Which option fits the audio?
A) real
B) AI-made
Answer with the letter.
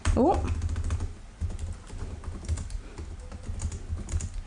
A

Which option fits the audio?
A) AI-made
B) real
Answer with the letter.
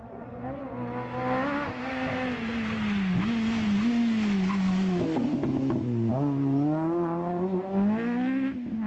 B